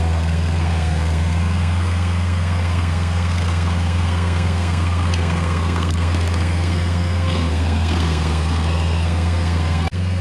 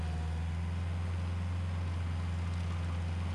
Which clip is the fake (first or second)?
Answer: first